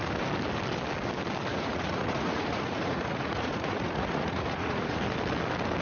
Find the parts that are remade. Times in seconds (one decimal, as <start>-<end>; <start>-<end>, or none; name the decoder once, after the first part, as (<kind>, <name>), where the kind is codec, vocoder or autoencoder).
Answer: 1.5-5.0 (vocoder, Vocos)